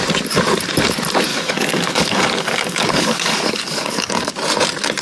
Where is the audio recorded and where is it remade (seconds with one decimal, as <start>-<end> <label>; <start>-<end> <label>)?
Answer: 0.0-1.3 recorded; 1.3-4.3 remade; 4.3-5.0 recorded